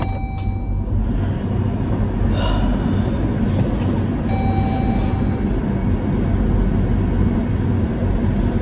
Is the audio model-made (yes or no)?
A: no